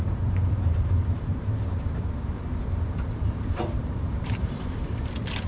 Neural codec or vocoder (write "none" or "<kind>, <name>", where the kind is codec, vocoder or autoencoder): vocoder, BigVGAN v2